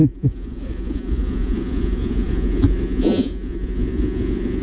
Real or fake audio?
fake